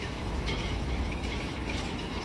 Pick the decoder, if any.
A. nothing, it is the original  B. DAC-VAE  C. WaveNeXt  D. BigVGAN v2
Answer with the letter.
B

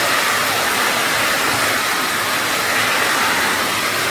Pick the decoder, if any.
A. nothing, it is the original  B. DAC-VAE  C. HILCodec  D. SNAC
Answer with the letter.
A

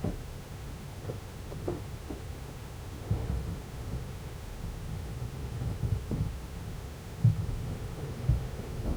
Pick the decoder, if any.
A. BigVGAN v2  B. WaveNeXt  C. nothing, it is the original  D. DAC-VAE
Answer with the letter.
D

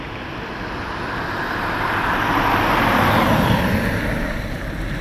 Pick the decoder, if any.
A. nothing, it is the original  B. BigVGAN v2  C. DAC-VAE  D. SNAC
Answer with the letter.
A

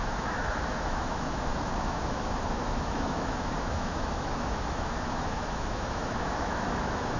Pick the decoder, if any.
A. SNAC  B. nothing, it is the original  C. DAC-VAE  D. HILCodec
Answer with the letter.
C